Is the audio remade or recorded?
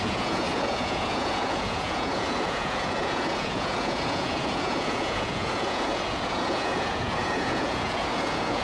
remade